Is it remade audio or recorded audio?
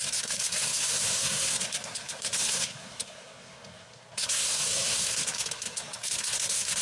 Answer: remade